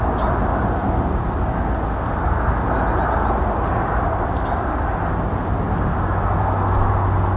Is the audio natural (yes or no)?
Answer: yes